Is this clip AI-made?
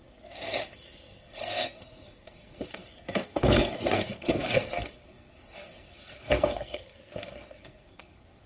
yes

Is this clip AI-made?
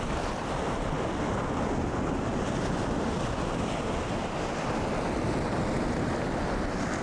no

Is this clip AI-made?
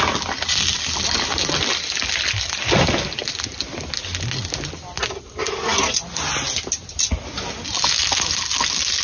no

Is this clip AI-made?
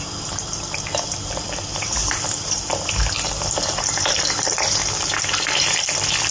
yes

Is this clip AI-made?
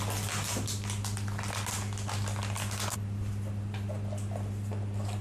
no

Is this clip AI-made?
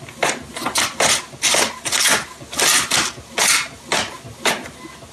no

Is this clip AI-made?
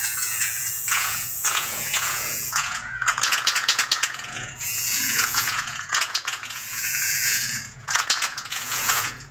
yes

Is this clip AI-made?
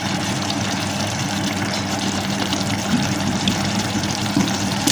yes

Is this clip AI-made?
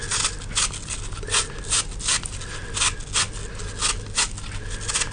no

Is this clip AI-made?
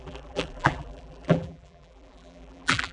yes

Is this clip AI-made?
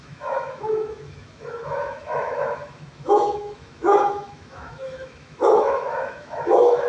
yes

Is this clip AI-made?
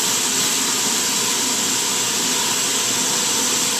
no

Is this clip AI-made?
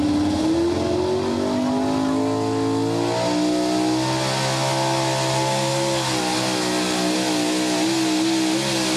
no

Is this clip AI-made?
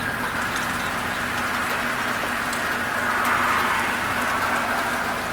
no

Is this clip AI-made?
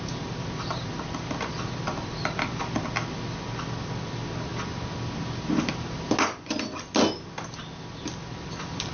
no